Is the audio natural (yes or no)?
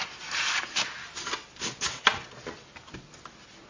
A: yes